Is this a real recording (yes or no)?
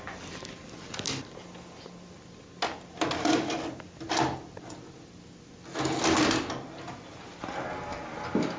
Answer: yes